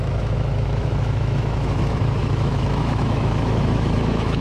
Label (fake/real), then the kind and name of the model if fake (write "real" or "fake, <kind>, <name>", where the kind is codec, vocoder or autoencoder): fake, autoencoder, DAC-VAE